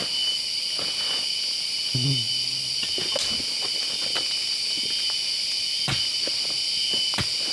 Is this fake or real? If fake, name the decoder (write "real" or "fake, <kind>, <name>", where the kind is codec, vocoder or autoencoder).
real